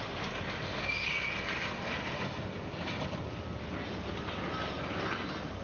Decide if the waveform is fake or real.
real